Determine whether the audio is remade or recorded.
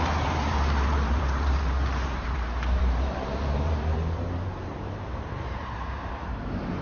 remade